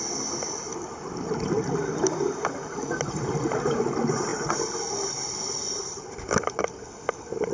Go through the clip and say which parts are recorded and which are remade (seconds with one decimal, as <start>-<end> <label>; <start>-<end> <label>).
0.0-0.7 recorded; 0.7-1.3 remade; 1.3-7.5 recorded